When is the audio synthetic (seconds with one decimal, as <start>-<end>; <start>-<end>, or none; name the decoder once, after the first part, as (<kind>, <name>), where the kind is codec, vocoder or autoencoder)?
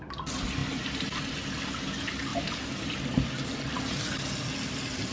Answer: none